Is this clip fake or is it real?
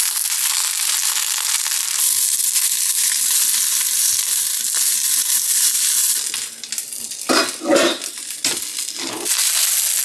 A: real